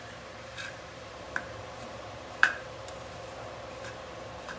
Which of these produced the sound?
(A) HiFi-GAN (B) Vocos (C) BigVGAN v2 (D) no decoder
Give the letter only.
C